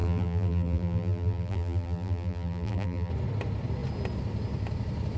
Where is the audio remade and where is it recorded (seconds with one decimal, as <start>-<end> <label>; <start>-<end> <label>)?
0.0-3.1 remade; 3.1-5.2 recorded